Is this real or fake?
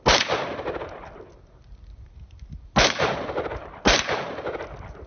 real